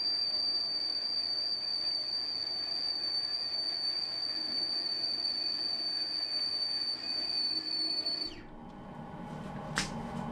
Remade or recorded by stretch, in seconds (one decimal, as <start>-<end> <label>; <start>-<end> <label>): 0.0-10.3 recorded